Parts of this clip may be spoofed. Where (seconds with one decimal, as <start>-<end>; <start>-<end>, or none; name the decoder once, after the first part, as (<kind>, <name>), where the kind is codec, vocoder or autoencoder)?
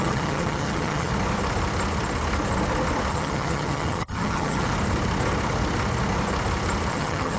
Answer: 0.0-1.1 (vocoder, HiFi-GAN); 3.1-4.7; 6.9-7.4